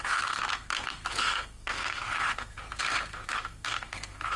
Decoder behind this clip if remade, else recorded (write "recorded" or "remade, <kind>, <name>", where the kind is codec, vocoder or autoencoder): remade, codec, SNAC